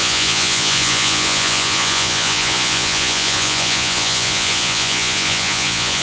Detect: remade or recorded remade